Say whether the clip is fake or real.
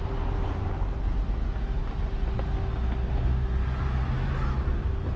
real